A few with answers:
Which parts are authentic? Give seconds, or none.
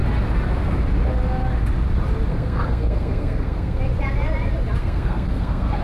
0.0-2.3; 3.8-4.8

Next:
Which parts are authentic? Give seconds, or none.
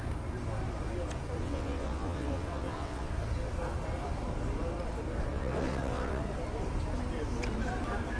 0.0-1.4; 3.1-5.3; 6.2-8.2